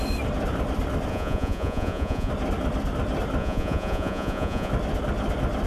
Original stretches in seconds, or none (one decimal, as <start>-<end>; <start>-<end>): 0.0-1.1; 2.3-3.4; 4.7-5.7